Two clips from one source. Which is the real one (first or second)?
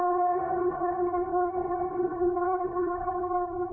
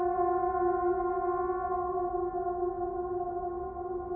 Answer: second